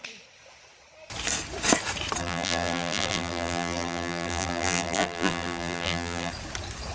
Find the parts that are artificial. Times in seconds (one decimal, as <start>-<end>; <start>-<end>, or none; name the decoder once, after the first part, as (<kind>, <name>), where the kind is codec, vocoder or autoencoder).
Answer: 2.2-6.3 (vocoder, BigVGAN v2)